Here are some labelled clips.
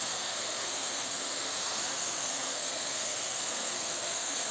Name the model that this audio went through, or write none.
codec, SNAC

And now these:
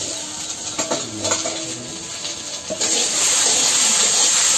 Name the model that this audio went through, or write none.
none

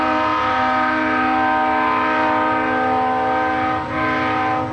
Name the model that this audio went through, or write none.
none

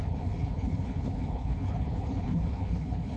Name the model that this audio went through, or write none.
codec, HILCodec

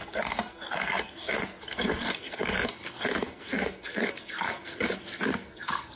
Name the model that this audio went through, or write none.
codec, SNAC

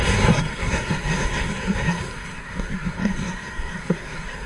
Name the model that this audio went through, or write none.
codec, SNAC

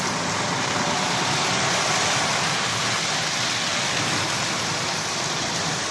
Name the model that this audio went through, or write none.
none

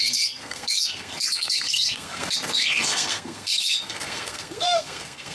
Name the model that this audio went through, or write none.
codec, SNAC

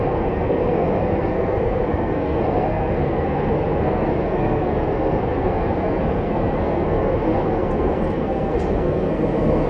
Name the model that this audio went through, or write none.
codec, SNAC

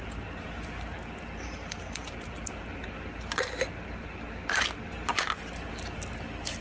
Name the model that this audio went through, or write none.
none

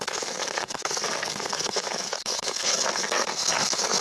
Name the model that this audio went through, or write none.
codec, SNAC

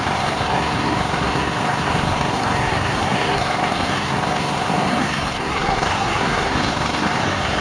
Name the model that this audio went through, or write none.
codec, SNAC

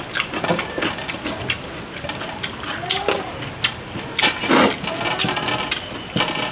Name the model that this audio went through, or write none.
none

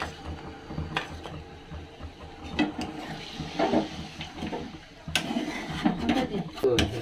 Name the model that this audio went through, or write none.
none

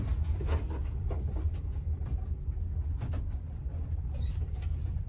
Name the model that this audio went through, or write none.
none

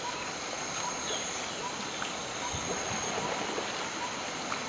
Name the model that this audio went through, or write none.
none